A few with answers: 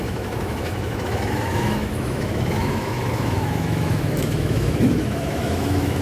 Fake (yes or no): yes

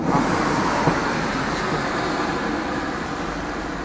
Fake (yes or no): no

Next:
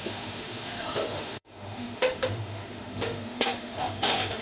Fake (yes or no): yes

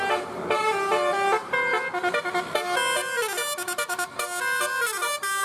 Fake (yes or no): no